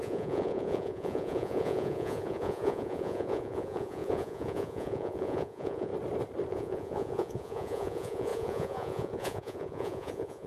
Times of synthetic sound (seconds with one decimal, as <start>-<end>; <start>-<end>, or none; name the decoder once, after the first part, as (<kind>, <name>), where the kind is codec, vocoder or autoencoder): 0.0-5.9 (vocoder, Vocos); 6.5-10.5